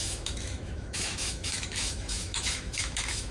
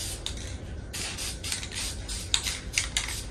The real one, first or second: second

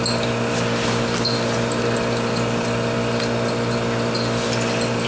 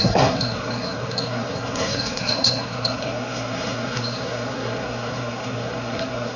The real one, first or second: first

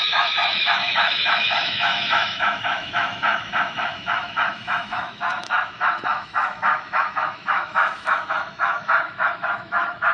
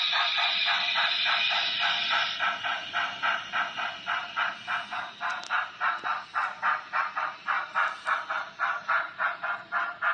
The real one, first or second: second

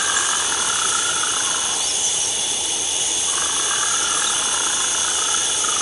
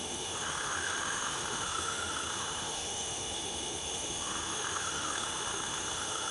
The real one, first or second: first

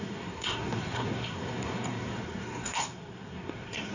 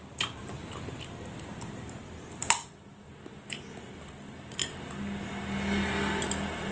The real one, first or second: second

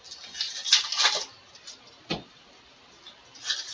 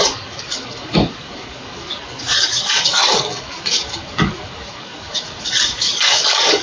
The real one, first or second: first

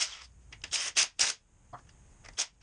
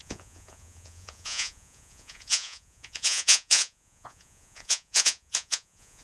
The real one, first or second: first